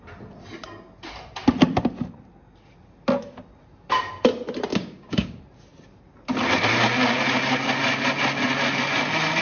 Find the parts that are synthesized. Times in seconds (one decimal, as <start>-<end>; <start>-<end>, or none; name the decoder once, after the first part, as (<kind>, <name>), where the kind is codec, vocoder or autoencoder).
4.7-5.4 (codec, DAC)